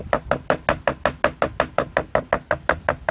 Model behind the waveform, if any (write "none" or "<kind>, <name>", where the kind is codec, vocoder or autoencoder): none